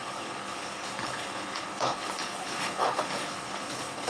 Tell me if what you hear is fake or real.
fake